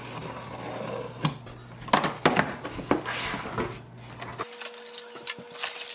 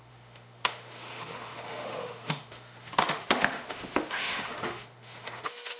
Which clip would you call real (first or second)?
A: first